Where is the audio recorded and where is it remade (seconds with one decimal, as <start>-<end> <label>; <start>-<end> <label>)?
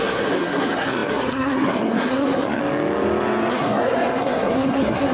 0.0-2.6 remade; 2.6-3.5 recorded; 3.5-5.1 remade